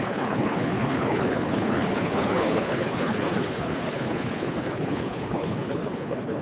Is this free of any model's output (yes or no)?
no